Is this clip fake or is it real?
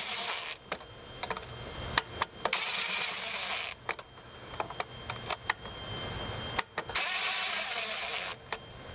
real